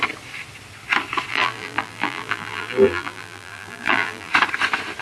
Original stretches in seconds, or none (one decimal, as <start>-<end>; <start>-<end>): 0.0-1.3; 4.3-5.0